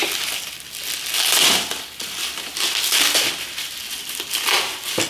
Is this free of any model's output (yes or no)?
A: yes